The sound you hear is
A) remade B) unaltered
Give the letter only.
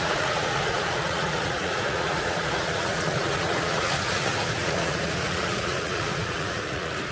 A